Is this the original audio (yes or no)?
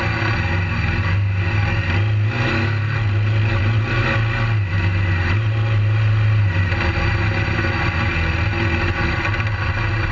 yes